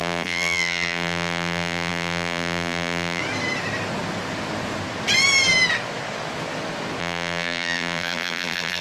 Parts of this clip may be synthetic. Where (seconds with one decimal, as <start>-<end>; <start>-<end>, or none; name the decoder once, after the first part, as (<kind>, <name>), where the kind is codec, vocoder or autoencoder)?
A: 0.0-3.2 (vocoder, BigVGAN v2); 7.0-8.8

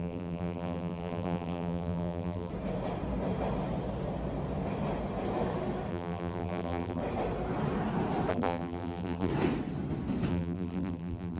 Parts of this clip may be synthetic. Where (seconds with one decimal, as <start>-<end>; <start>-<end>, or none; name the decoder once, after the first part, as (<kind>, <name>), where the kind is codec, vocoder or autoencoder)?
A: 0.0-2.5 (vocoder, BigVGAN v2); 5.9-7.0; 8.3-9.3; 10.3-11.4

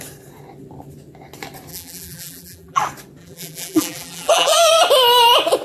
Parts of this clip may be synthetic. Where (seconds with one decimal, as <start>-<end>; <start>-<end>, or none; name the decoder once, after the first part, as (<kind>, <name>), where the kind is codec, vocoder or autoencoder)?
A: 1.7-2.8 (vocoder, BigVGAN v2); 3.2-4.7

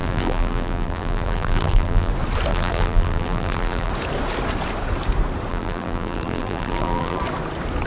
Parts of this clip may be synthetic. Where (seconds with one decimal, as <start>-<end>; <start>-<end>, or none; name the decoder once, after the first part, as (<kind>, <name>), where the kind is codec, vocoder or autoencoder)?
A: 0.0-2.1 (vocoder, BigVGAN v2); 2.5-3.9; 5.5-7.2

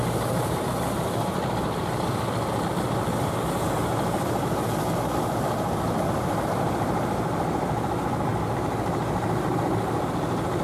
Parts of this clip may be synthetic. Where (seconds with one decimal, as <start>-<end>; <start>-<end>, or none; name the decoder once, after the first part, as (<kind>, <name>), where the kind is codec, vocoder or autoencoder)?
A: 0.0-2.2 (vocoder, BigVGAN v2)

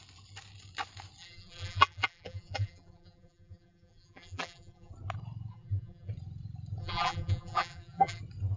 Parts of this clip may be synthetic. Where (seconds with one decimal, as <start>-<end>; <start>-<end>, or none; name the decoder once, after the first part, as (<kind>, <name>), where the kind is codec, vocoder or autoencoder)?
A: 1.2-4.9 (vocoder, BigVGAN v2); 5.5-6.1; 6.8-8.2

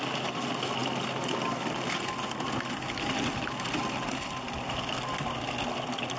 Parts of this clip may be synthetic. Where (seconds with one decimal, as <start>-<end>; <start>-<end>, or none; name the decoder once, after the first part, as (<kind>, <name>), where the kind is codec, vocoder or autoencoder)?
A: none